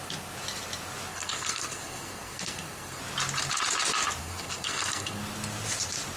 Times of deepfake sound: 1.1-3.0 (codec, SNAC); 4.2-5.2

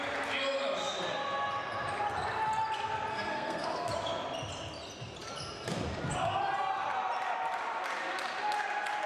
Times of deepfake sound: 3.1-3.9 (codec, SNAC)

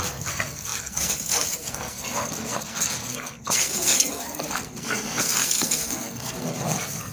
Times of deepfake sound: 0.0-7.1 (codec, SNAC)

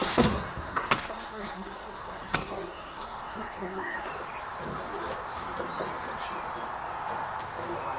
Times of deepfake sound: 0.0-4.1 (codec, SNAC)

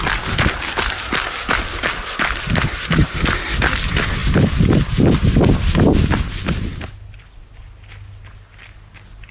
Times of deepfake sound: none